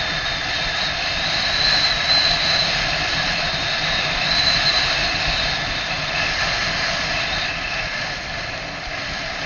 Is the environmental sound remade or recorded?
recorded